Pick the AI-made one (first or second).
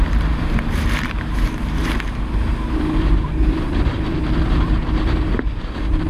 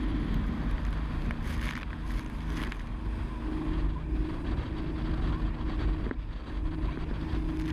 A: first